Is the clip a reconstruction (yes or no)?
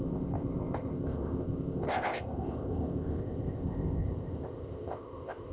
yes